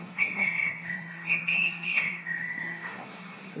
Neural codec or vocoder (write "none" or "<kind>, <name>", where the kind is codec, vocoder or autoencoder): codec, SNAC